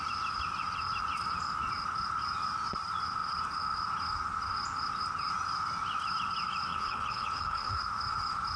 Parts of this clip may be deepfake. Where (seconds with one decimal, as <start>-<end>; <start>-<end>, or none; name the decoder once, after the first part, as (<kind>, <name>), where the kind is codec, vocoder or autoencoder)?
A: 6.7-7.8 (codec, HILCodec)